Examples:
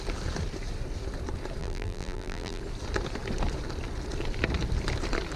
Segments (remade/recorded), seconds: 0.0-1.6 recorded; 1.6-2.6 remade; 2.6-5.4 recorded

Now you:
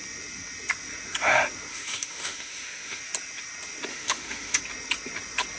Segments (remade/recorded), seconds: 0.0-1.7 recorded; 1.7-3.0 remade; 3.0-3.9 recorded; 3.9-4.6 remade; 4.6-5.6 recorded

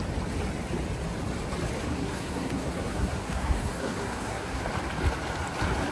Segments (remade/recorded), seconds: 0.0-1.9 recorded; 1.9-4.6 remade; 4.6-5.9 recorded

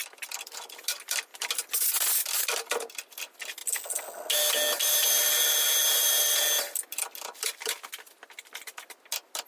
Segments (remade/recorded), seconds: 0.0-9.5 recorded

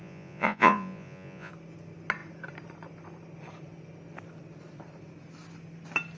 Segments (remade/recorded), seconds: 0.0-1.5 remade; 1.5-6.2 recorded

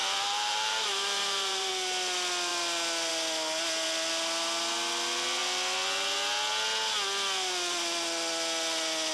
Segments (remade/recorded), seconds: 0.0-1.7 remade; 1.7-9.1 recorded

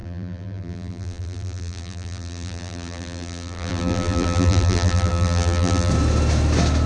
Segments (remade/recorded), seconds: 0.0-5.9 remade; 5.9-6.9 recorded

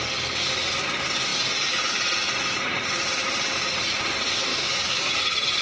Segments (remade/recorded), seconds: 0.0-4.5 recorded; 4.5-5.1 remade; 5.1-5.6 recorded